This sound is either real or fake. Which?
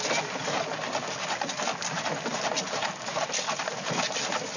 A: real